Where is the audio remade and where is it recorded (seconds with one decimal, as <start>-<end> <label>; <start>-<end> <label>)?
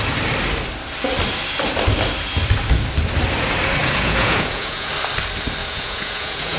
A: 0.0-3.8 recorded; 3.8-4.9 remade; 4.9-5.6 recorded; 5.6-6.6 remade